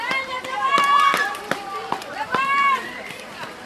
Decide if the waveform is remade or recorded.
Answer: remade